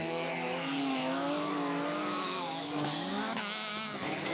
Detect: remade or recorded remade